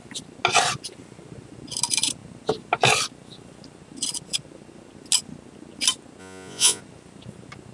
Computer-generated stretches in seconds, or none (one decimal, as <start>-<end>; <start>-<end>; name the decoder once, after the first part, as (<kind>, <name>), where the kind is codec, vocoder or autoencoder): 6.2-6.8 (vocoder, Vocos)

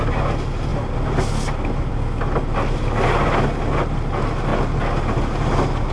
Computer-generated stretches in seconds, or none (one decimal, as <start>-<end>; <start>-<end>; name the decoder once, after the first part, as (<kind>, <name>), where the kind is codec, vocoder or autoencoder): none

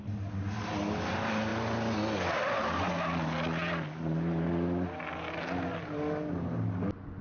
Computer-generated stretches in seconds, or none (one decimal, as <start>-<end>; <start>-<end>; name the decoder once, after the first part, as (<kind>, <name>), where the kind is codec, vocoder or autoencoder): none

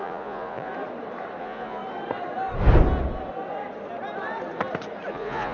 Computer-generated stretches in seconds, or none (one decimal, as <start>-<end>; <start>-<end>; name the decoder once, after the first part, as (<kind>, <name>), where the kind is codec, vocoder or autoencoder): 0.0-0.7 (vocoder, Vocos); 1.4-1.8; 5.1-5.5

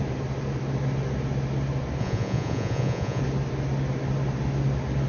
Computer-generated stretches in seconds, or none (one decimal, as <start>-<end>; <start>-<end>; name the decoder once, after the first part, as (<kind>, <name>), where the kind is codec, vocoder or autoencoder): 2.0-3.2 (vocoder, Vocos)

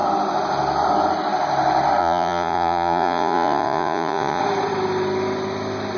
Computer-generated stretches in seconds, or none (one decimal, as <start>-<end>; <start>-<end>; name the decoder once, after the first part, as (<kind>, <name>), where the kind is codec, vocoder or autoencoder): 2.0-4.4 (vocoder, Vocos)

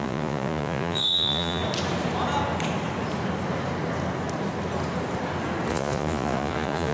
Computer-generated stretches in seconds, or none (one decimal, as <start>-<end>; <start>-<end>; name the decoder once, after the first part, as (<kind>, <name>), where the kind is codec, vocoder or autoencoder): 0.0-1.6 (vocoder, Vocos); 5.7-6.9